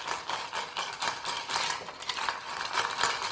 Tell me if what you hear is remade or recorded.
recorded